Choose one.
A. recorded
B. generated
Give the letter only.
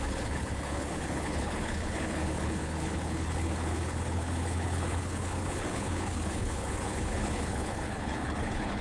B